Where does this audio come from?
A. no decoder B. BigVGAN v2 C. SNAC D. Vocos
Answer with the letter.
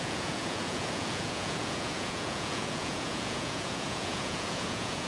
D